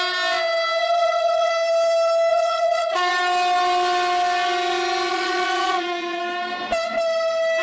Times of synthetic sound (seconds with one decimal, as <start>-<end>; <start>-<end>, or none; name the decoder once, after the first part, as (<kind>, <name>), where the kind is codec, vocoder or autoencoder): 0.8-1.5 (vocoder, Vocos); 2.3-3.1; 5.1-6.2